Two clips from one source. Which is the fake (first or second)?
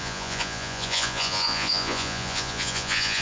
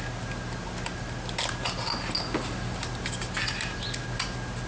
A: first